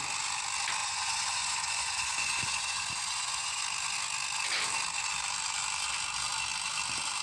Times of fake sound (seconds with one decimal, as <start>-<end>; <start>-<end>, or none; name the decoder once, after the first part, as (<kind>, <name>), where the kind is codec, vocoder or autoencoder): 0.8-3.6 (vocoder, Vocos)